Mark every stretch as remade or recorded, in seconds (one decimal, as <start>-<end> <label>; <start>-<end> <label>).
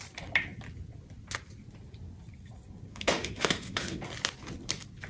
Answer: 0.0-2.9 recorded; 2.9-4.0 remade; 4.0-5.1 recorded